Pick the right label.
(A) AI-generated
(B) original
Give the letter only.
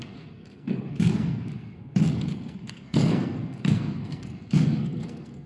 A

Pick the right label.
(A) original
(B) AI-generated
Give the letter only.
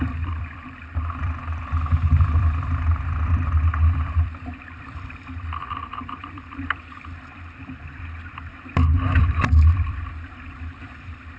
B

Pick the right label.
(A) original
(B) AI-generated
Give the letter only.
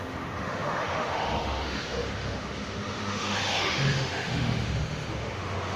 B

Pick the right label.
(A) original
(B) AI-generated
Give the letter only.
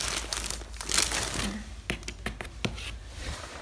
A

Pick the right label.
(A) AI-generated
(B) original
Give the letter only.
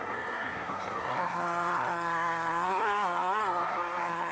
A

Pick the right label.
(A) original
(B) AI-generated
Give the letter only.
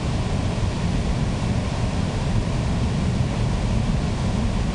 A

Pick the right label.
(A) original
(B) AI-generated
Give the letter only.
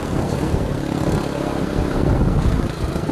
B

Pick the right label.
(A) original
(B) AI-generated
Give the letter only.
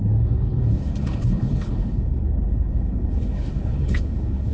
B